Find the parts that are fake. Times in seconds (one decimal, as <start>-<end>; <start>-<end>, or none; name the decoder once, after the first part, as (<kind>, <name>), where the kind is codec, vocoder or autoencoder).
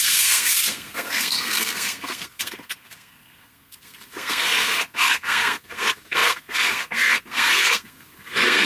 0.0-8.7 (codec, SNAC)